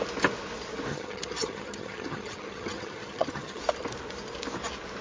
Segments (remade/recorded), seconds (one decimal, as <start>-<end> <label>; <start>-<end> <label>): 0.0-0.9 recorded; 0.9-3.6 remade; 3.6-5.0 recorded